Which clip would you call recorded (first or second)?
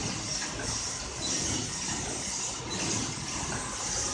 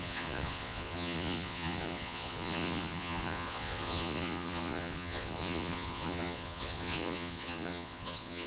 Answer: first